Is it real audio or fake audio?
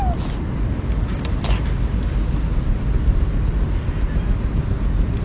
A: real